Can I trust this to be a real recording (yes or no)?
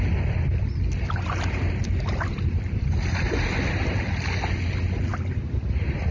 yes